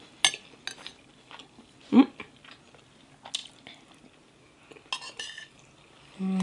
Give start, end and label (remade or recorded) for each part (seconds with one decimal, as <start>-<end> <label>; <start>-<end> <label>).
0.0-6.4 recorded